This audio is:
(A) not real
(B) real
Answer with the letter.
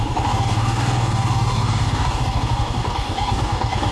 A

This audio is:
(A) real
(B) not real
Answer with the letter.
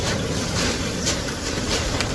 B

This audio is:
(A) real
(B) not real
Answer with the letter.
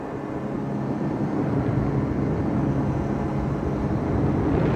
A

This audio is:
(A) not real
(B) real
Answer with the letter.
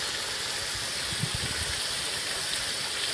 B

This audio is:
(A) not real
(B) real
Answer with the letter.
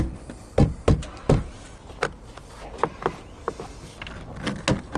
B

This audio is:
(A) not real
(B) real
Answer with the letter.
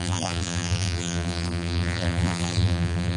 A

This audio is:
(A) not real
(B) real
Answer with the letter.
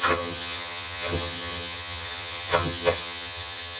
A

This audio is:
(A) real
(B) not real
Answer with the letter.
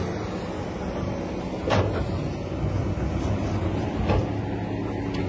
A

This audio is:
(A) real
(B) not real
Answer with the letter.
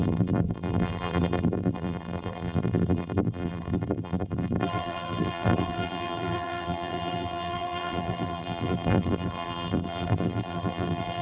B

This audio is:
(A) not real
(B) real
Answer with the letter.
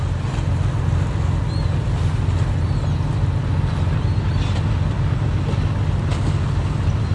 B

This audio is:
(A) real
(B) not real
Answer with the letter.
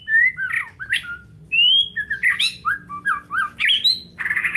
A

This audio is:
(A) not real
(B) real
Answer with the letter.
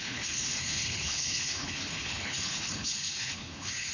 A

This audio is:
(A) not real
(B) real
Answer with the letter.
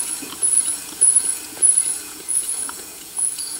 A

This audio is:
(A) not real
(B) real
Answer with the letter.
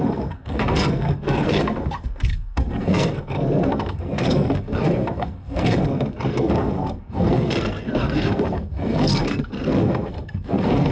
A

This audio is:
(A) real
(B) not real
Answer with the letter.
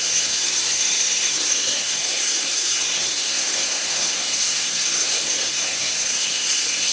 B